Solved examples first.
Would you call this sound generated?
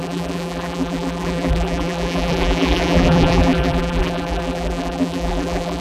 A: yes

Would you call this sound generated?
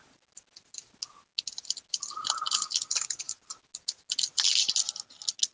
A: no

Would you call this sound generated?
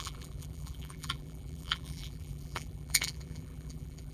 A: yes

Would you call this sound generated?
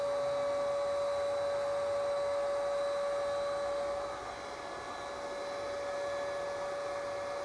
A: no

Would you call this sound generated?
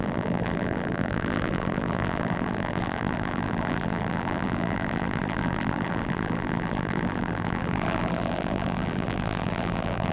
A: yes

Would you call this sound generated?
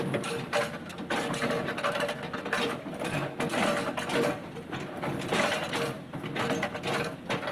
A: no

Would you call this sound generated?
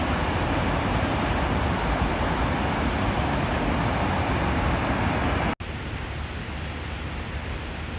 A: no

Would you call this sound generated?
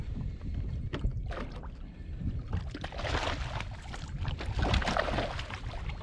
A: no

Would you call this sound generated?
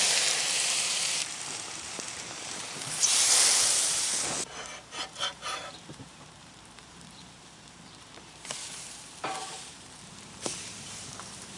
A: yes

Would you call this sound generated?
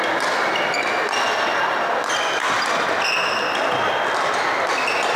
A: no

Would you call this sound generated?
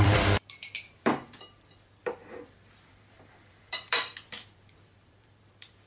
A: yes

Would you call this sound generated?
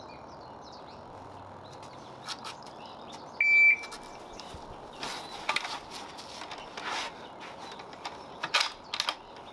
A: no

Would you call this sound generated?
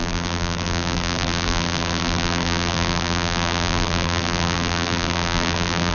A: yes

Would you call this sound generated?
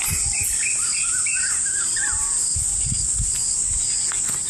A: no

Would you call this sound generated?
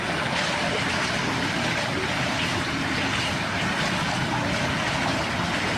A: no